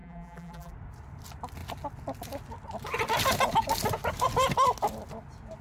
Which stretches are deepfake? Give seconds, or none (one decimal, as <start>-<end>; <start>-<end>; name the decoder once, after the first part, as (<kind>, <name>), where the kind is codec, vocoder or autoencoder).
0.0-0.7 (vocoder, BigVGAN v2)